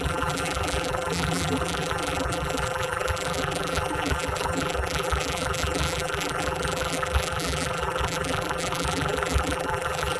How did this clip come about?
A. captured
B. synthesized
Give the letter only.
B